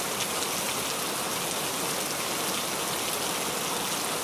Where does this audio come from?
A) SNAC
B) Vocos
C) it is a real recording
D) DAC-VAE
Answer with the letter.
C